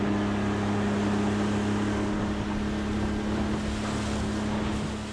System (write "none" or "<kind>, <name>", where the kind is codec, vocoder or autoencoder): none